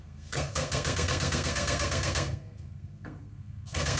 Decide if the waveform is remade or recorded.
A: remade